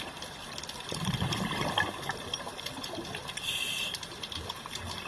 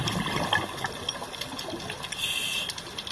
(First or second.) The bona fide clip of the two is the second